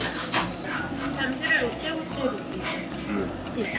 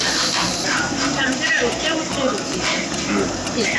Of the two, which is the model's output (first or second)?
second